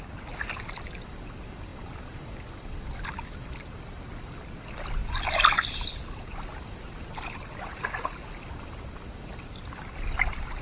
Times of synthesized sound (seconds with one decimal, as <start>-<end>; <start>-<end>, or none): none